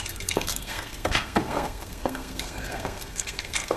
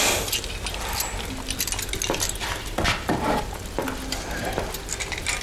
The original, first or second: second